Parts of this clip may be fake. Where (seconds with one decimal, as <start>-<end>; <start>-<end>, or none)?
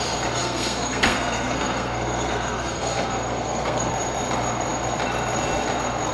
0.4-3.9